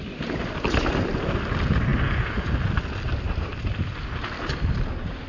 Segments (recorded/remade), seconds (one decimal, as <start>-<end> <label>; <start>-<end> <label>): 0.0-5.3 recorded